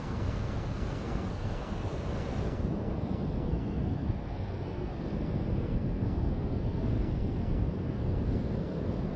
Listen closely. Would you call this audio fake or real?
fake